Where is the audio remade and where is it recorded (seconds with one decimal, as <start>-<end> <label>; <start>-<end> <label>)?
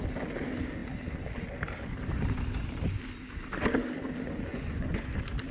0.0-4.5 recorded; 4.5-5.1 remade; 5.1-5.5 recorded